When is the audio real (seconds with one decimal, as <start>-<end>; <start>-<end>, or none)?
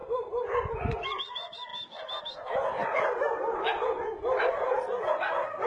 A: 0.7-2.8; 5.0-5.7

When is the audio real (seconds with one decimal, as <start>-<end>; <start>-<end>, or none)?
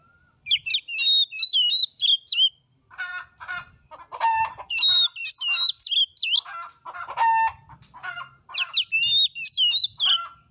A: 0.7-2.5; 5.2-10.0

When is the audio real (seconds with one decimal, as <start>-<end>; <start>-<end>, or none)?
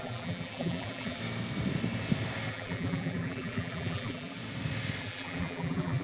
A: 1.2-2.5; 4.4-5.0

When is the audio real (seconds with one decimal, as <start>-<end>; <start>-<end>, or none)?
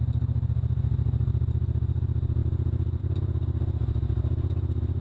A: 0.0-2.4; 3.0-5.0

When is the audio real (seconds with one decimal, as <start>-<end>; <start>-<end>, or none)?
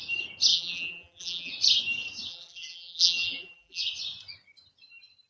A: 0.0-0.5; 1.5-2.3; 3.8-5.3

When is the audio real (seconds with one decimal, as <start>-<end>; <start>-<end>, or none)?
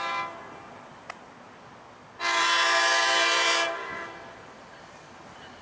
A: 0.0-5.6